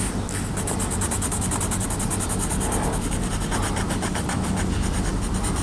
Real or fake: real